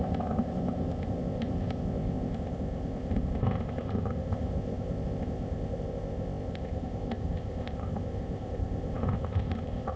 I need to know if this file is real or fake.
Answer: fake